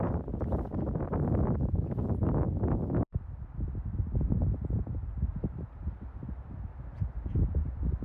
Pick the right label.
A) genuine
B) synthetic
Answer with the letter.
A